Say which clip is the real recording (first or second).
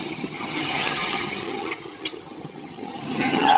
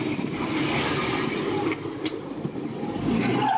second